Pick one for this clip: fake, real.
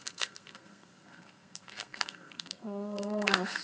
fake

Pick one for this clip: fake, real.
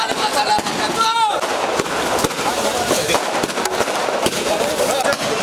real